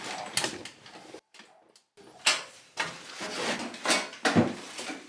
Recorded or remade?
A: recorded